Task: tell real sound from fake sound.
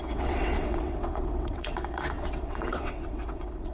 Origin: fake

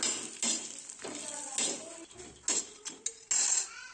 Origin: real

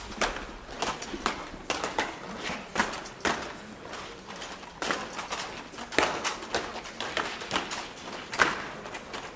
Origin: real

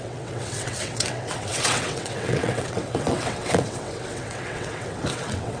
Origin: fake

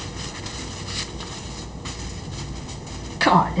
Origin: real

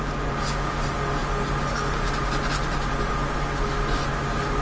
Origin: real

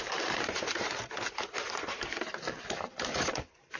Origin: real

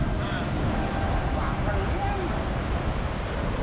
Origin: real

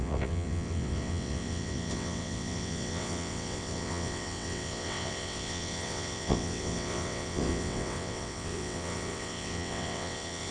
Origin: fake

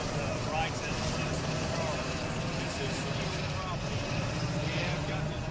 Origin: real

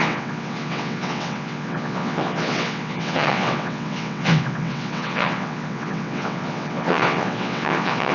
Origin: fake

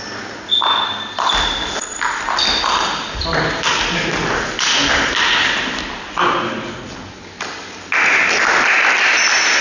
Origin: real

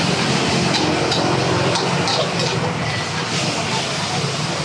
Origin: real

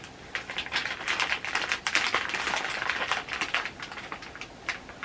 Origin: real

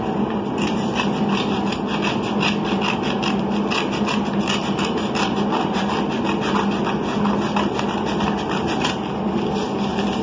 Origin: real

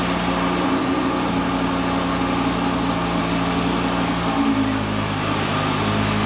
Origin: real